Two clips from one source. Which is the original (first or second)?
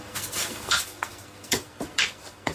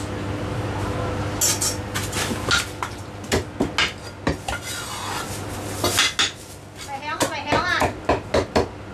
second